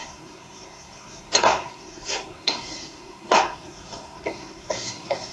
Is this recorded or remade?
remade